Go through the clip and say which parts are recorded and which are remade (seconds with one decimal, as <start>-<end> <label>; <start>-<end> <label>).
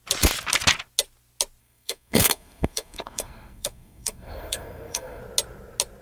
0.0-1.6 recorded; 1.6-5.2 remade; 5.2-6.0 recorded